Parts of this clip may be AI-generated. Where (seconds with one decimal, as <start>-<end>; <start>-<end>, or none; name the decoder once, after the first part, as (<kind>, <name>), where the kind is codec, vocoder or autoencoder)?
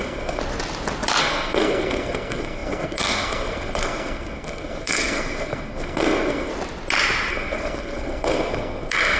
0.0-0.4 (codec, SNAC); 1.2-6.5; 7.3-9.2